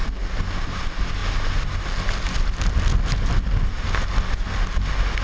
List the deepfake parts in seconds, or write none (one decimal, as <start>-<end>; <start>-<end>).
none